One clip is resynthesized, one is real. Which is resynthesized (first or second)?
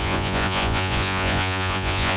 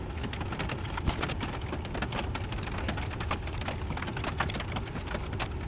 first